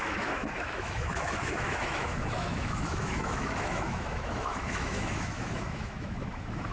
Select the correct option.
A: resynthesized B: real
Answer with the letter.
A